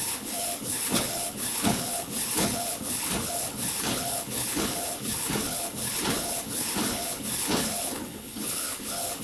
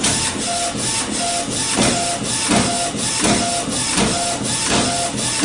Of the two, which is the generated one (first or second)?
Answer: first